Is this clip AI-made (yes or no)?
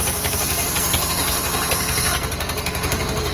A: yes